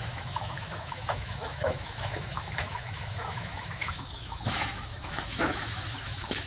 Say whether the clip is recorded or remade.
remade